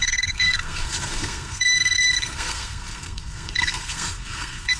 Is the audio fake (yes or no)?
yes